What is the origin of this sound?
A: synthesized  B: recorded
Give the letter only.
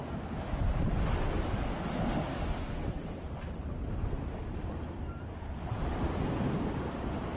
B